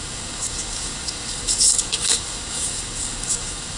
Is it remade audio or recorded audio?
remade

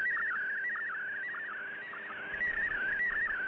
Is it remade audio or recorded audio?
remade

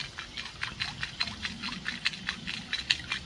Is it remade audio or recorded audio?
recorded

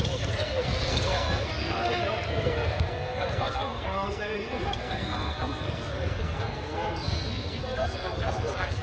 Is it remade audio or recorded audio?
remade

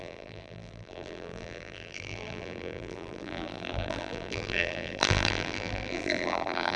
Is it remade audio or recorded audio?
remade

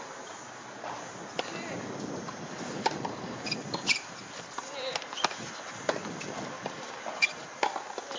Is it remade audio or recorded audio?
recorded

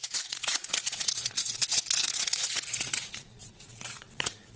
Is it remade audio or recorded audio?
remade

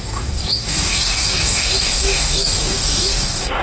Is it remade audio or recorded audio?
remade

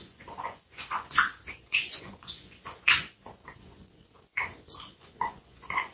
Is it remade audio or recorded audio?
remade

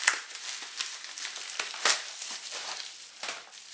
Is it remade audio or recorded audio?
remade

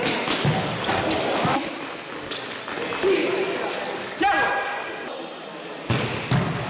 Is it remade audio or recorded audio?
recorded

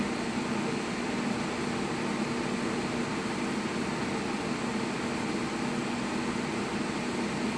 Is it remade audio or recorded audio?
recorded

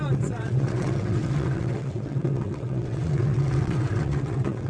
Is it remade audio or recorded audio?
remade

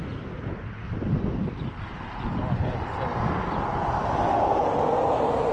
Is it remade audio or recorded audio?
recorded